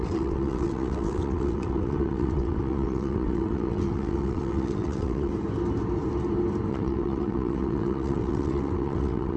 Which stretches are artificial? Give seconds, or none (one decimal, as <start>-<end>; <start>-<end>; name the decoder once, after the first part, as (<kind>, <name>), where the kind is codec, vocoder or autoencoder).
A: 0.0-5.3 (vocoder, WaveNeXt); 6.7-9.4

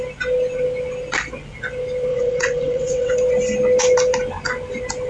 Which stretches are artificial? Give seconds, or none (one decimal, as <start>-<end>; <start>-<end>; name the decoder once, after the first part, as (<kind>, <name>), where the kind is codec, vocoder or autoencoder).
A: 2.1-3.1 (vocoder, WaveNeXt)